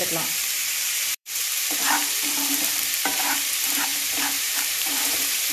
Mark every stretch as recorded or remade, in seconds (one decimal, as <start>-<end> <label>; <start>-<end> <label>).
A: 0.0-0.4 remade; 0.4-1.0 recorded; 1.0-2.0 remade; 2.0-2.5 recorded; 2.5-5.5 remade